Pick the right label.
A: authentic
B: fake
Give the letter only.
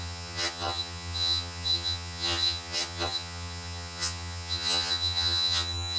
B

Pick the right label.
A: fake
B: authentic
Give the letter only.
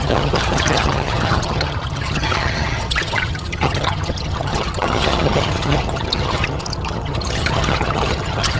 A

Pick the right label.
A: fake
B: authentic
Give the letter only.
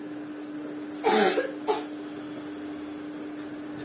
B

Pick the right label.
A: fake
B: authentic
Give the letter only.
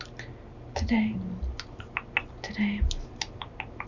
B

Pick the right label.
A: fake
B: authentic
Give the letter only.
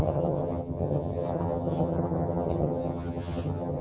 A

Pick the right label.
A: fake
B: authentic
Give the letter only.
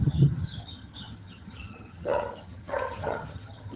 A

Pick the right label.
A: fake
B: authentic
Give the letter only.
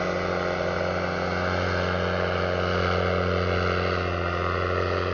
B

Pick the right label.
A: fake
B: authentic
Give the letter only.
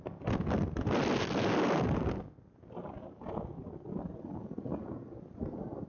B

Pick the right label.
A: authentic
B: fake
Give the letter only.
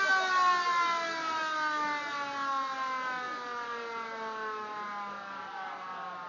A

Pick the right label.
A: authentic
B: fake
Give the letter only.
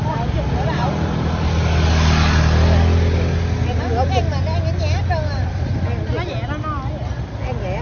A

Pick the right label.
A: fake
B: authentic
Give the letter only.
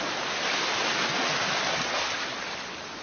B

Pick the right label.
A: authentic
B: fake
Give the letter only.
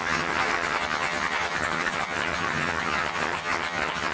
B